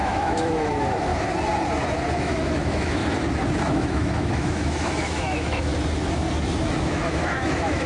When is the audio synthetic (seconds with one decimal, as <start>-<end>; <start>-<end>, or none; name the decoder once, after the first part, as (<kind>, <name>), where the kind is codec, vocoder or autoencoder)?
0.0-1.1 (autoencoder, DAC-VAE); 2.1-3.0; 3.7-5.7; 6.8-7.9